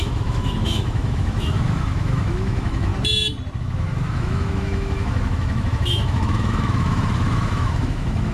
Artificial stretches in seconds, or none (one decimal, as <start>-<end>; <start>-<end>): 0.0-2.9; 3.6-8.3